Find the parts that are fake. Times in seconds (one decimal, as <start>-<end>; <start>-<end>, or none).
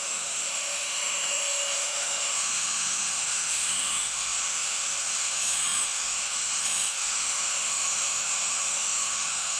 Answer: 0.0-9.6